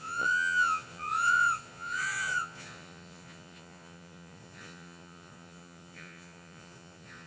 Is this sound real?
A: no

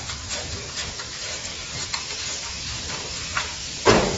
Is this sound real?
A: yes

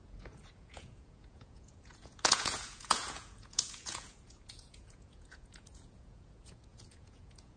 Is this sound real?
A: no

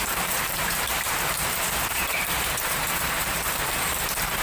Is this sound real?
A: no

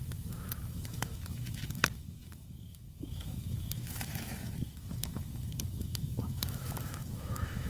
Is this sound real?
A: no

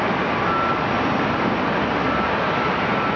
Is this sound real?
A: yes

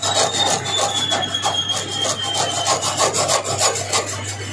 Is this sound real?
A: yes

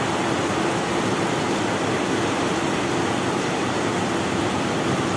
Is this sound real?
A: yes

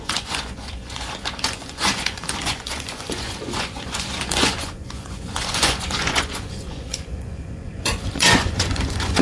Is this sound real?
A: no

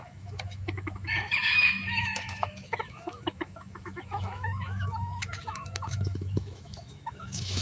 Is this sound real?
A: no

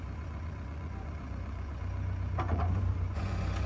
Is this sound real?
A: no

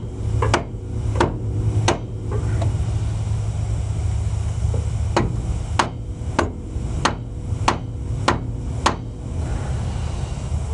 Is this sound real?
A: yes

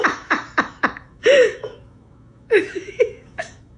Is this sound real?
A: no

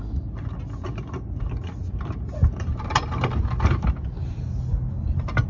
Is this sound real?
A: yes